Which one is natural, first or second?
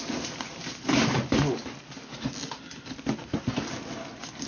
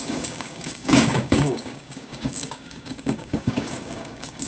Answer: first